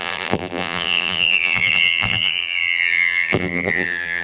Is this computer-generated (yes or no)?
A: yes